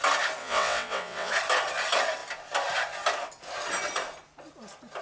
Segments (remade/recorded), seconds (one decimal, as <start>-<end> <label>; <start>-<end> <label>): 0.0-0.4 recorded; 0.4-1.3 remade; 1.3-5.0 recorded